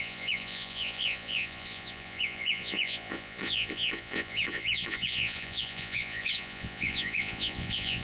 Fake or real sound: fake